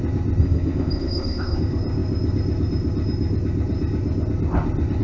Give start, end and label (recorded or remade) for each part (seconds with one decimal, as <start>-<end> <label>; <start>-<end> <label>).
0.0-0.4 recorded; 0.4-1.6 remade; 1.6-5.0 recorded